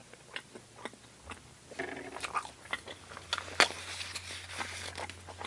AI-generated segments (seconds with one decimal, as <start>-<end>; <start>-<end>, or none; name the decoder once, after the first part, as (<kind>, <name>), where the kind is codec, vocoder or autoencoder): none